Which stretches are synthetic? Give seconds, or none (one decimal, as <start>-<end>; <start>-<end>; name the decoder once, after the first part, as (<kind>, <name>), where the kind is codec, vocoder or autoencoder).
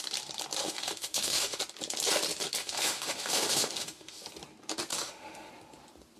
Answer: 0.6-1.6 (autoencoder, DAC-VAE); 2.6-4.2; 4.9-5.5